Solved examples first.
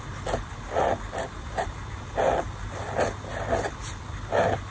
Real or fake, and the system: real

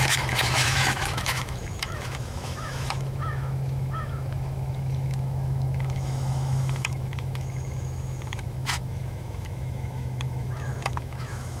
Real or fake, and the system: fake, autoencoder, DAC-VAE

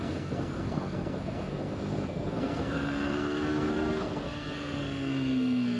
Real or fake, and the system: fake, codec, SNAC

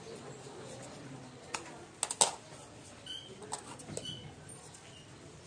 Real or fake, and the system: real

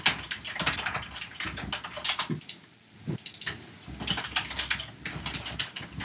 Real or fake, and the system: real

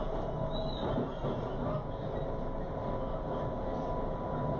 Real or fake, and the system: real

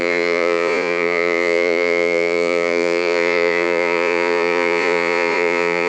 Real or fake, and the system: fake, vocoder, Vocos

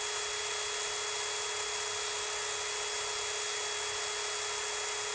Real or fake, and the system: real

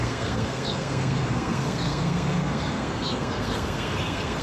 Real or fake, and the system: fake, codec, SNAC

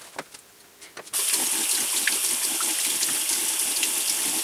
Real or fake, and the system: real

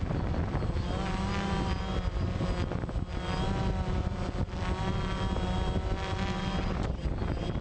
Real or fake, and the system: real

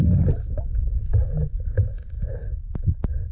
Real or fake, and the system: real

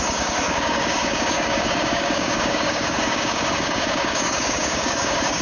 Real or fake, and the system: fake, codec, DAC